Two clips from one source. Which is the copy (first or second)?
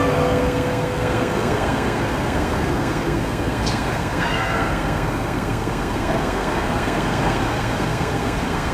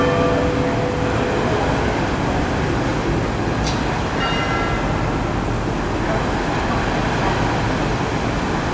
first